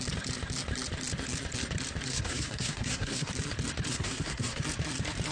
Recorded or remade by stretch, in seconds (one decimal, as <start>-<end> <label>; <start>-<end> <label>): 0.0-2.1 recorded; 2.1-3.3 remade; 3.3-3.9 recorded; 3.9-4.6 remade; 4.6-5.3 recorded